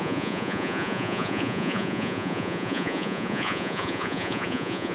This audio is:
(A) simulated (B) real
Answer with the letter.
A